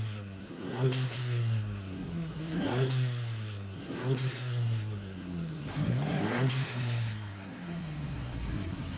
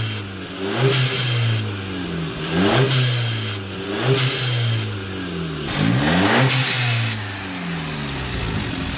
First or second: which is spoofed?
first